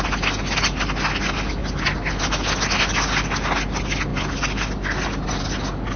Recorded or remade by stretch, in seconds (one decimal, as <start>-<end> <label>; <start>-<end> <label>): 0.0-6.0 recorded